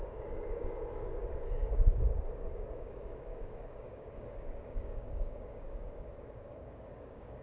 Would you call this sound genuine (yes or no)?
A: no